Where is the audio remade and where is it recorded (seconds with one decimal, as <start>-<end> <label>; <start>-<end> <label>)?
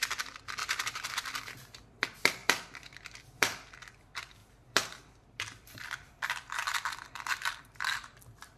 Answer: 0.0-0.6 remade; 0.6-1.1 recorded; 1.1-8.6 remade